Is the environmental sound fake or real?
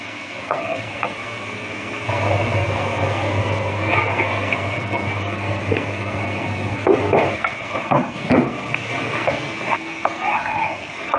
fake